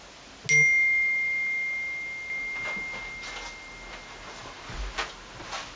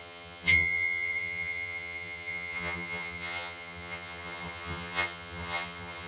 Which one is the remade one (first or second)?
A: second